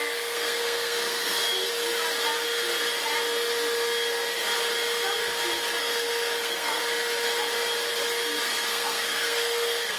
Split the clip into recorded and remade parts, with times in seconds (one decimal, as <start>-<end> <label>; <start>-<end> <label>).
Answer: 0.0-1.4 remade; 1.4-5.8 recorded; 5.8-6.8 remade; 6.8-8.4 recorded; 8.4-10.0 remade